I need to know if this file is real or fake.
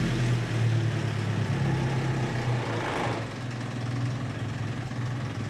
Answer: real